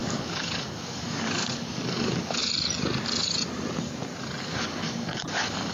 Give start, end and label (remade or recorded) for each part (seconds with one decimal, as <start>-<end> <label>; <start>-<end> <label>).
0.0-2.4 remade; 2.4-4.4 recorded; 4.4-5.7 remade